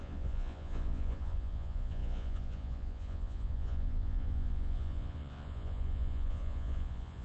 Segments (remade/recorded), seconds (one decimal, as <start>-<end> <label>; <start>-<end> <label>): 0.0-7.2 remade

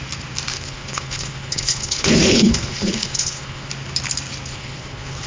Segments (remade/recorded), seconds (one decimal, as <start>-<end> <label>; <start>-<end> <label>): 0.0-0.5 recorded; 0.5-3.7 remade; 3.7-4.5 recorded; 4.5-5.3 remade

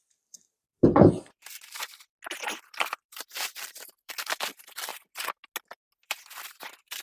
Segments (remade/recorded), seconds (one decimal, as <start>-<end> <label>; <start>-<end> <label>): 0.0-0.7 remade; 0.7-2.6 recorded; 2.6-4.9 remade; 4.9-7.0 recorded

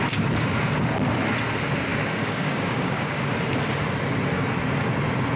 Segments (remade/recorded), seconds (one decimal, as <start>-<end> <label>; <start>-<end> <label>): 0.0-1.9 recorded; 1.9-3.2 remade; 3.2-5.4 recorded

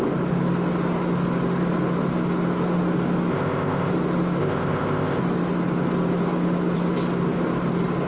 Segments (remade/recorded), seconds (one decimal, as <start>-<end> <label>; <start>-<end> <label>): 0.0-3.3 recorded; 3.3-3.9 remade; 3.9-4.4 recorded; 4.4-5.2 remade; 5.2-8.1 recorded